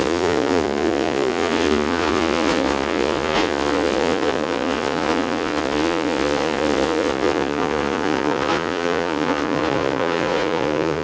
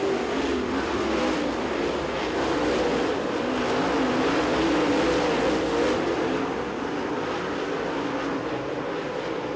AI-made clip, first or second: first